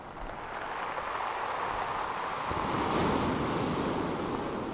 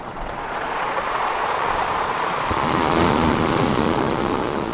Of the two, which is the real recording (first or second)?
first